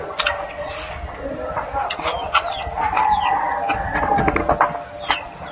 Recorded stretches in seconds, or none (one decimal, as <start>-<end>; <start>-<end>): 0.0-5.5